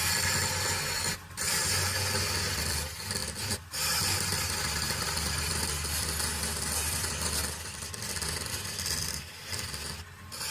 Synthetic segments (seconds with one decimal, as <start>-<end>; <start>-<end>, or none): none